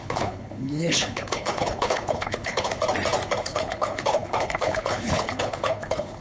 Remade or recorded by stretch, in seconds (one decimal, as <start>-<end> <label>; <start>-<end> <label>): 0.0-2.7 remade; 2.7-3.4 recorded; 3.4-6.2 remade

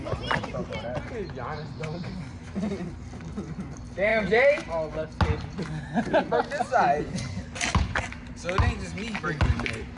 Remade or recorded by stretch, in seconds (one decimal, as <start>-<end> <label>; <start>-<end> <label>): 0.0-10.0 recorded

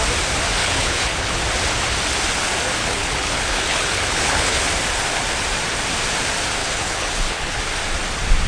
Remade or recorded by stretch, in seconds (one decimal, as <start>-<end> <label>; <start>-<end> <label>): 0.0-0.6 recorded; 0.6-1.4 remade; 1.4-2.8 recorded; 2.8-4.6 remade; 4.6-6.6 recorded; 6.6-7.6 remade; 7.6-8.5 recorded